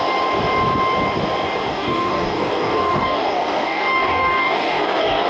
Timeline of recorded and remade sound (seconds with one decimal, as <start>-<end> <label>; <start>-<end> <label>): 0.0-1.7 recorded; 1.7-5.3 remade